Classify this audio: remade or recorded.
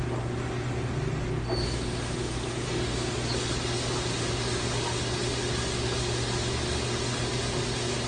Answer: recorded